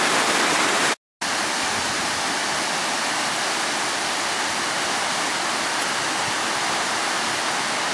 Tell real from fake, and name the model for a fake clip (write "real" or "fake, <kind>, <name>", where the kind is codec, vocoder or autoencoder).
real